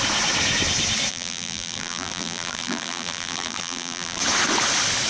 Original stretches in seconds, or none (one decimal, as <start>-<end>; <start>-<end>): 0.0-1.1; 4.2-5.1